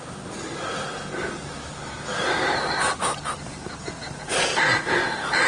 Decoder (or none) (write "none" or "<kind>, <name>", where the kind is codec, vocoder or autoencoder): none